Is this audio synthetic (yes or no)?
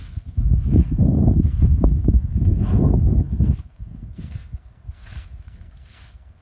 yes